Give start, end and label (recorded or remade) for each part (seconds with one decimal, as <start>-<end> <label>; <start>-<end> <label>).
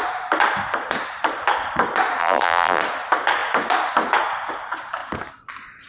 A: 0.0-2.2 recorded; 2.2-2.8 remade; 2.8-5.9 recorded